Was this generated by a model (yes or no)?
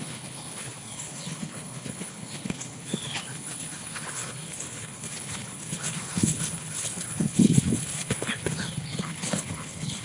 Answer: yes